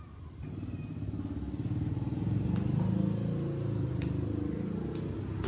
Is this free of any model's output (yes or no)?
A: yes